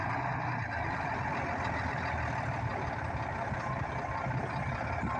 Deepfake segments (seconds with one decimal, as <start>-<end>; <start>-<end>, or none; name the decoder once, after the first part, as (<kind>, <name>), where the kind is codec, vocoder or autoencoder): none